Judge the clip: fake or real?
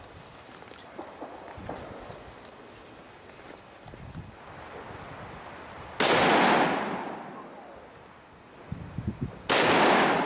real